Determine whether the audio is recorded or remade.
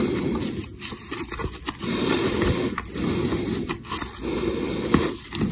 remade